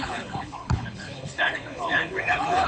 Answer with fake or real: fake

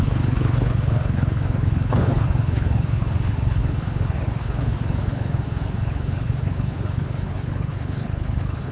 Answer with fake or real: fake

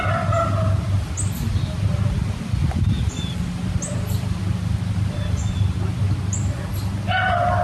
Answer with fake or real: real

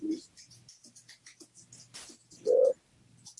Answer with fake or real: real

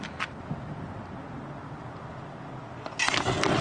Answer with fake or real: real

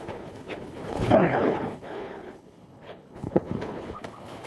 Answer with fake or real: fake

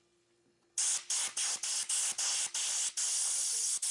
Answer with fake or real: real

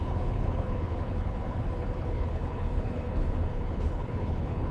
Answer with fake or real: fake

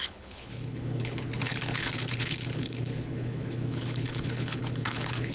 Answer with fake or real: fake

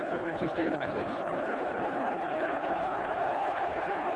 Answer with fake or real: fake